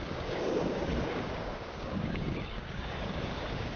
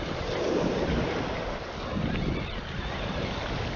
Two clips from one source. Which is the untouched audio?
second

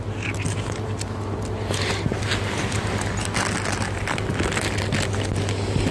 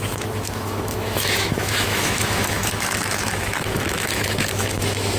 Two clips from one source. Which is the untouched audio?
first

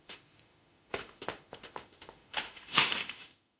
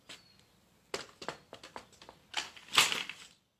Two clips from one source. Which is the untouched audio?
second